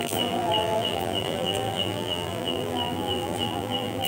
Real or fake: fake